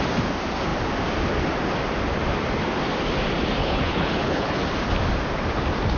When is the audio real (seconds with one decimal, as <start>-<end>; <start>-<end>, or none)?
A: 0.0-3.6; 4.6-6.0